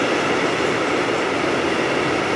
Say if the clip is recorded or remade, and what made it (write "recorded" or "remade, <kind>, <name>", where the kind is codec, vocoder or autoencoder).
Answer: recorded